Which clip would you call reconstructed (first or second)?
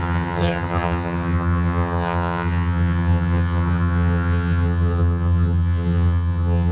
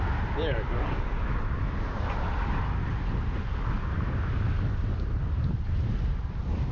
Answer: first